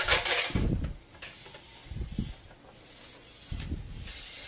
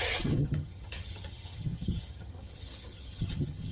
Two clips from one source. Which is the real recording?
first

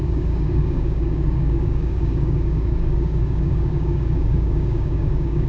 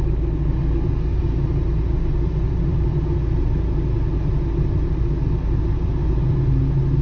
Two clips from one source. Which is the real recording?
second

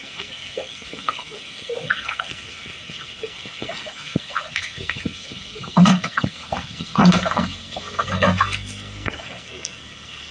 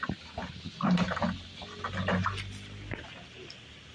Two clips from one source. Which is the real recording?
second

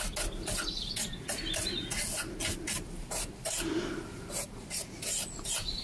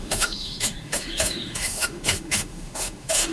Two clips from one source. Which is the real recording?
first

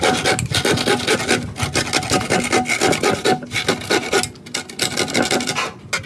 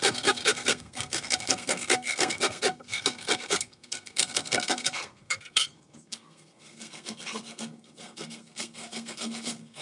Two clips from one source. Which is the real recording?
first